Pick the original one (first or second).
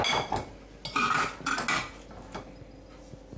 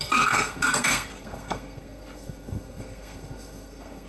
first